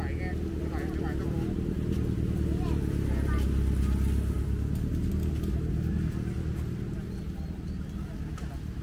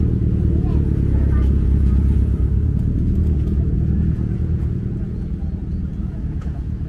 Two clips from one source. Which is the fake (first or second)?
second